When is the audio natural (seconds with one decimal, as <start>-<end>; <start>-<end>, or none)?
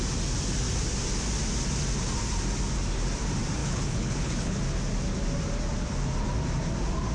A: 0.0-3.6; 4.6-7.1